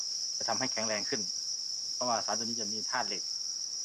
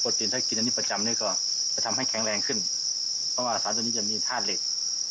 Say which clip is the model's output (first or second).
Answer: first